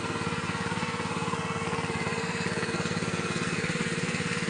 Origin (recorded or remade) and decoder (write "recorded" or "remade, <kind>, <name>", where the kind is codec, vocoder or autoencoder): remade, codec, SNAC